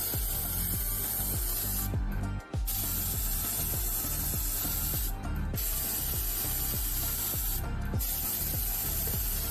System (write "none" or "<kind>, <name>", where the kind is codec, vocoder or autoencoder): none